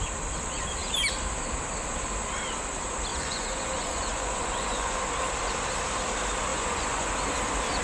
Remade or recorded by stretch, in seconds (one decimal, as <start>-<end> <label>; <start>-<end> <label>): 0.0-3.1 recorded; 3.1-5.0 remade; 5.0-6.5 recorded; 6.5-7.1 remade; 7.1-7.8 recorded